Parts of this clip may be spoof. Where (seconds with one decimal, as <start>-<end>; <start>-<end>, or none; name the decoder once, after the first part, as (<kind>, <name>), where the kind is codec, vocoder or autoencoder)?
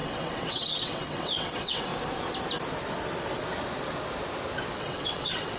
0.0-1.9 (vocoder, WaveNeXt); 4.8-5.6